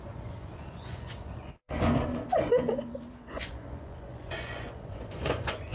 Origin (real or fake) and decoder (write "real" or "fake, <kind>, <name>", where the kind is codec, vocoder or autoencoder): fake, vocoder, Vocos